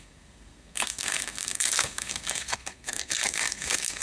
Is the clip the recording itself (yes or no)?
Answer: no